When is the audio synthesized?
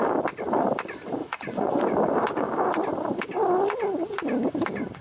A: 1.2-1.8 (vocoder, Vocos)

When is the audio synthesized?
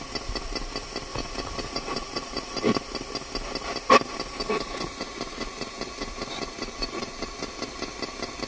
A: 1.1-2.7 (vocoder, Vocos); 4.4-7.5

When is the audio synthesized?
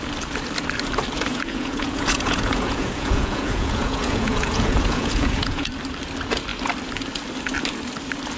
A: 1.3-5.7 (vocoder, Vocos)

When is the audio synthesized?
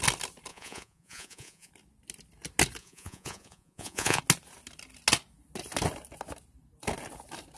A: 0.5-1.7 (vocoder, Vocos); 2.8-4.2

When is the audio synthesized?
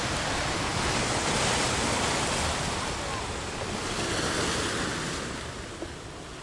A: none